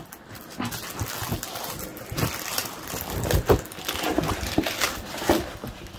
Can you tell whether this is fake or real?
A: real